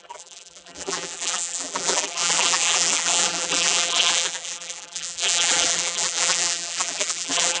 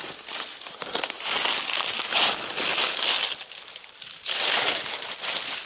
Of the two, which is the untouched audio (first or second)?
second